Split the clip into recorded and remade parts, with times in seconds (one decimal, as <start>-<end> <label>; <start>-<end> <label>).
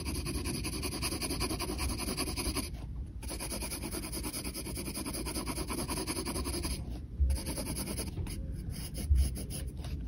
0.0-10.1 recorded